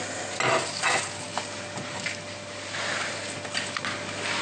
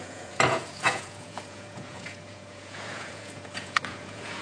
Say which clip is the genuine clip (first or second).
first